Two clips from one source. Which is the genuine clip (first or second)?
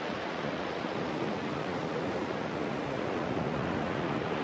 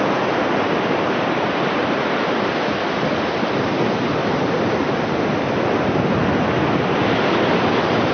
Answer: second